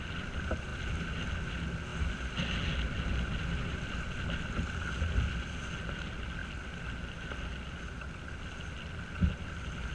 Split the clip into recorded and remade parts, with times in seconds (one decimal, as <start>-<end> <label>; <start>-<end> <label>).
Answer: 0.0-9.9 recorded